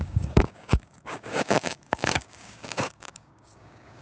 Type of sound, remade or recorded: remade